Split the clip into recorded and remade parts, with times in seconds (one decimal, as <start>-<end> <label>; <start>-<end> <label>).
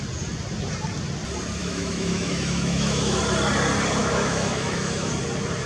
0.0-1.6 recorded; 1.6-3.2 remade; 3.2-4.0 recorded; 4.0-5.1 remade; 5.1-5.7 recorded